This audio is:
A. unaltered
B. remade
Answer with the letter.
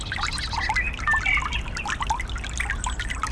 A